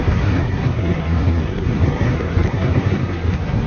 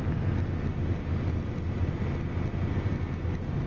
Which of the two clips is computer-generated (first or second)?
first